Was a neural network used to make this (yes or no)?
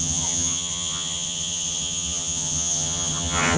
yes